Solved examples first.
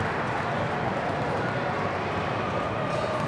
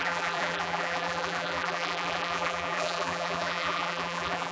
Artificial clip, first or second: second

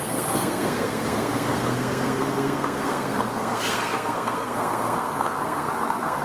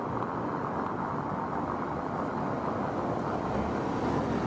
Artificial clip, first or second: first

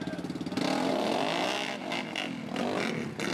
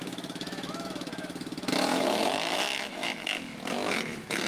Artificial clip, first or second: second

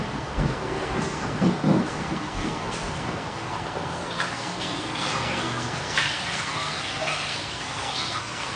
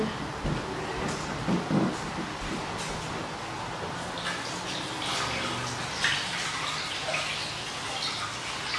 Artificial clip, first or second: first